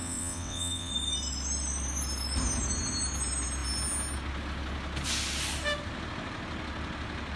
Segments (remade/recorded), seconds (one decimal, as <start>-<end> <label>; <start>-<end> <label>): 0.0-0.9 remade; 0.9-7.4 recorded